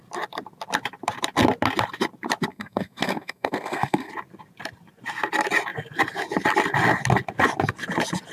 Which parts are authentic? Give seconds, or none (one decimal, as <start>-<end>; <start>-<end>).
0.0-2.5; 4.1-8.3